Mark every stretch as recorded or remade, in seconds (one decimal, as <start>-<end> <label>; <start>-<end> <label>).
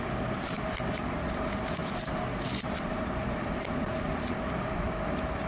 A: 0.0-5.5 recorded